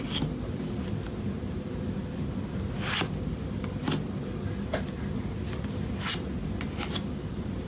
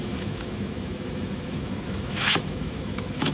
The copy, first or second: second